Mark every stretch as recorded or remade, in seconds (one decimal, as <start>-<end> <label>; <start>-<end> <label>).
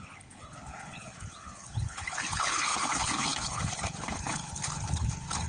0.0-5.5 remade